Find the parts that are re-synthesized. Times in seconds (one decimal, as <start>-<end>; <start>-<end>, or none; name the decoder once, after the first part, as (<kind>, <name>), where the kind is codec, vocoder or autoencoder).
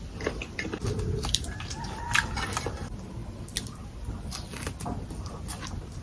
0.0-3.2 (vocoder, BigVGAN v2); 3.8-4.5; 5.1-6.0